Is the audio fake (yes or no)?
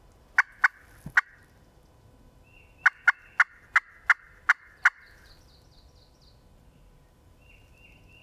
no